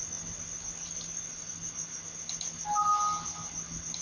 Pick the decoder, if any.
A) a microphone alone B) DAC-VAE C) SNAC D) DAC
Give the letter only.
A